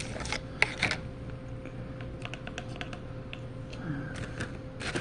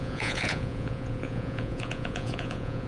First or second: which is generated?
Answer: second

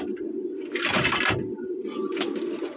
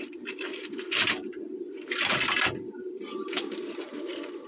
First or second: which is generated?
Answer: second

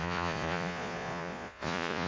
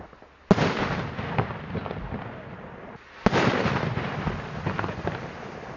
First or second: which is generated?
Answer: first